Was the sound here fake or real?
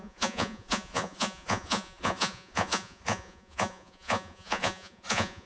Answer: fake